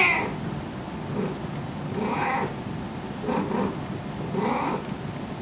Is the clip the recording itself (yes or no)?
yes